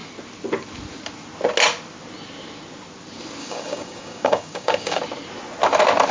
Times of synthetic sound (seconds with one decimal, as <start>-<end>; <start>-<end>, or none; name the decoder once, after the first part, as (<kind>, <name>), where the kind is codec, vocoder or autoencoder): 3.4-5.0 (codec, DAC)